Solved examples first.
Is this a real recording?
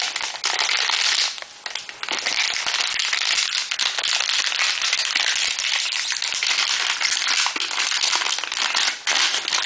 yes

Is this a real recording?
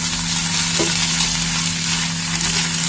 yes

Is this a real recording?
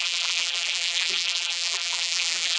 no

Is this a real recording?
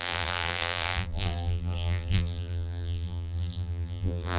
no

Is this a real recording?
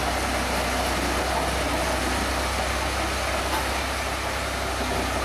yes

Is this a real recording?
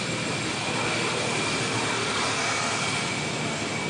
no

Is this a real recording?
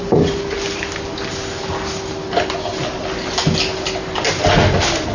yes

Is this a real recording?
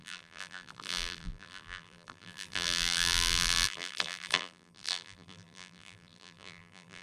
no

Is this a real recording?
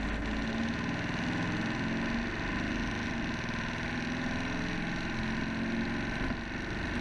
yes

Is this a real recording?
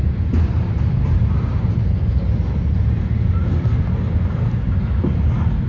yes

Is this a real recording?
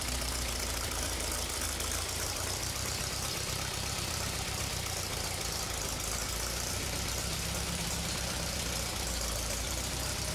no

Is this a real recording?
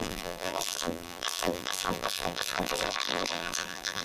no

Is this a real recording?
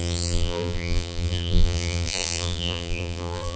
no